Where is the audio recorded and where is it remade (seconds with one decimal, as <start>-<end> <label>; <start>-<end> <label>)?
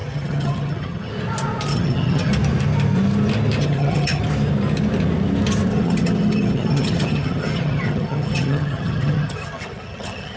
0.0-1.1 remade; 1.1-1.7 recorded; 1.7-2.3 remade; 2.3-3.6 recorded; 3.6-4.2 remade; 4.2-5.7 recorded; 5.7-10.4 remade